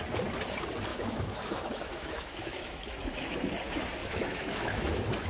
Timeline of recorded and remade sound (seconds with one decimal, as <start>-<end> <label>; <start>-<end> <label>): 0.0-0.9 recorded; 0.9-3.5 remade; 3.5-4.0 recorded; 4.0-5.3 remade